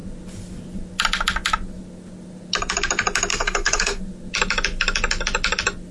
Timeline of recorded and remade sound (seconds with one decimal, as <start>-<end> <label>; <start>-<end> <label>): 0.0-3.3 recorded; 3.3-4.0 remade; 4.0-5.9 recorded